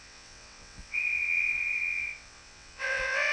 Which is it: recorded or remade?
remade